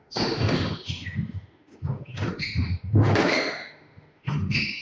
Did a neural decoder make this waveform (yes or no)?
yes